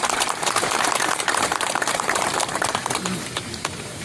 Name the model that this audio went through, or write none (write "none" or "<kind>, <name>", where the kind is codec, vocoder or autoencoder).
vocoder, BigVGAN v2